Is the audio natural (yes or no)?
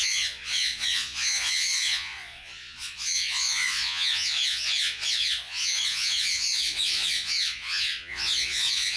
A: no